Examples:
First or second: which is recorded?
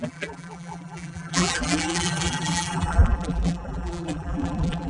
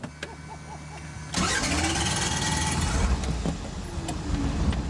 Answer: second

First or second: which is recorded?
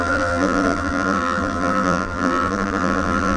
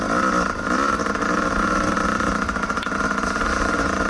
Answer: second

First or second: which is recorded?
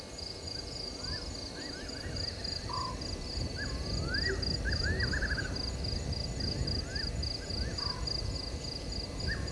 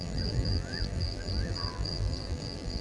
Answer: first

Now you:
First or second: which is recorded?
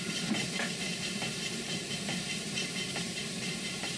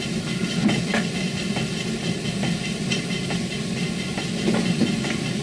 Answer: second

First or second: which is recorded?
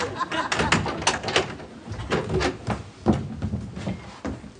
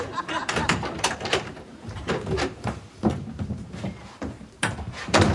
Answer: first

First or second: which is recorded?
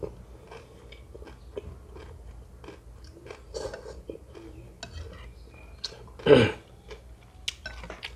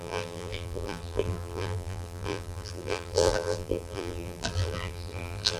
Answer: first